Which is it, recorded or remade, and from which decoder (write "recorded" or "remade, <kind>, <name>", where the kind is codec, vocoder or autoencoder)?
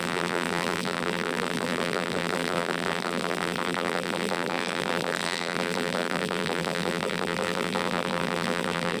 remade, vocoder, BigVGAN v2